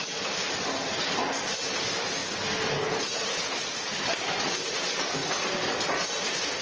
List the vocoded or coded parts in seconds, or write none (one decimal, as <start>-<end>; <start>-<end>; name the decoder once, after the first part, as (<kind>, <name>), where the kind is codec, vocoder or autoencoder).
none